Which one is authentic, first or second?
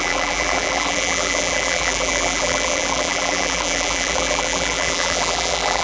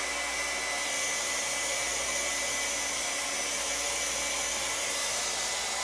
second